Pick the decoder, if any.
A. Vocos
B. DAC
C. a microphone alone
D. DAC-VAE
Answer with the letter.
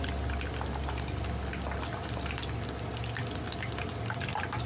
C